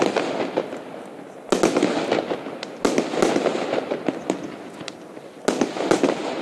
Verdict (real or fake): real